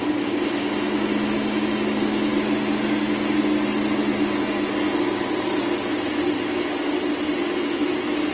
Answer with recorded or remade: recorded